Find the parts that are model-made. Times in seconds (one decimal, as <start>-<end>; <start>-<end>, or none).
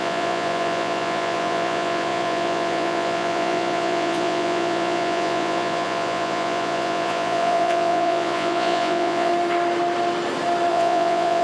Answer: 0.0-9.3; 10.7-11.4